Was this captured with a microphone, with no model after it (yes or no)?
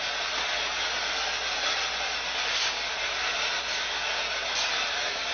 yes